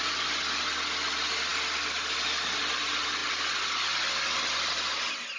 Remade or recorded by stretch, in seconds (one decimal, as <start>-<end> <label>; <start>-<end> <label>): 0.0-5.4 recorded